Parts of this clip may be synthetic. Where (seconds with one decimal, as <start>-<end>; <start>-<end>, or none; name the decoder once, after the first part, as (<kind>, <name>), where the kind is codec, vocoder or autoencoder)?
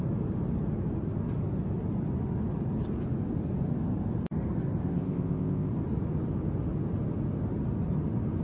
4.8-5.7 (codec, ZipCodec)